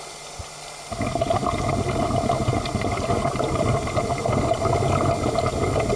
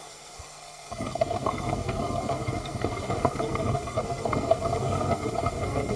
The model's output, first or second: second